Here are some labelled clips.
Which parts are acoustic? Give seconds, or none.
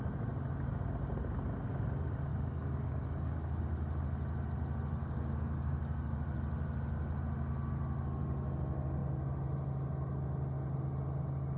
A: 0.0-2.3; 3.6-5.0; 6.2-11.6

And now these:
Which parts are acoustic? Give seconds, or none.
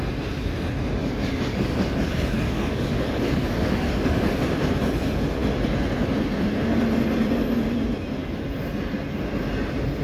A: 0.0-1.0; 4.3-10.0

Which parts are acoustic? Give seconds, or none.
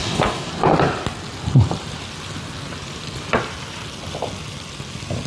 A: 0.5-5.3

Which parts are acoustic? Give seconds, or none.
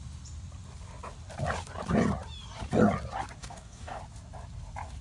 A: 0.0-3.4; 4.0-5.0